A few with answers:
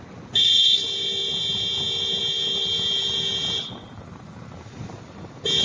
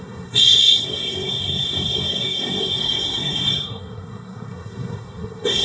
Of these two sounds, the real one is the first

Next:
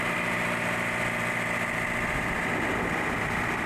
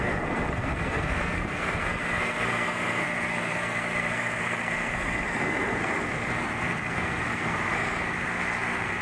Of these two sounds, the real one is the first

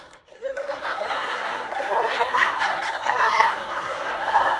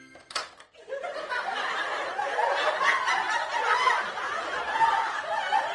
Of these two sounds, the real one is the second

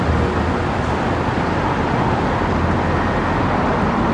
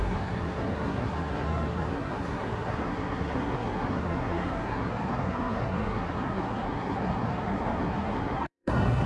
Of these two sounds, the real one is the first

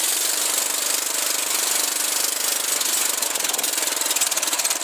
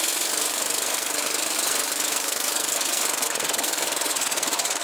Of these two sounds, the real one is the first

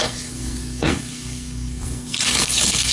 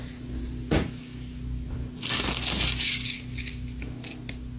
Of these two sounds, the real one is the second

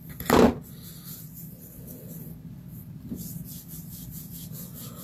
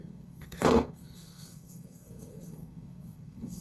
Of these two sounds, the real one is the first